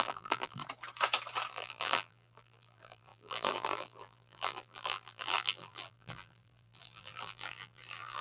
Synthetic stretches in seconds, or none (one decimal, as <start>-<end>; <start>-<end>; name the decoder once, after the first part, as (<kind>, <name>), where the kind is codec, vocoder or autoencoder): 0.0-0.6 (vocoder, BigVGAN v2); 1.5-8.2